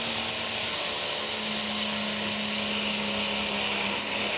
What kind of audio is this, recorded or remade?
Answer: recorded